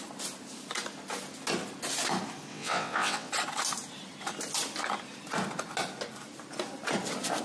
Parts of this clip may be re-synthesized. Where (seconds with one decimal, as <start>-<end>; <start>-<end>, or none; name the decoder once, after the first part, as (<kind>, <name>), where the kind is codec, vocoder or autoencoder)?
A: 2.5-3.3 (vocoder, WaveNeXt)